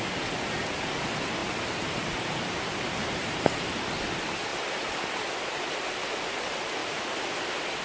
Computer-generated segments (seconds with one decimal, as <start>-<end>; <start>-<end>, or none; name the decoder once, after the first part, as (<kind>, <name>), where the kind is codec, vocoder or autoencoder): 1.4-4.1 (vocoder, BigVGAN v2)